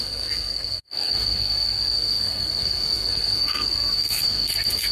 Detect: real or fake fake